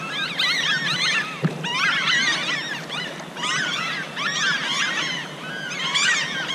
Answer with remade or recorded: recorded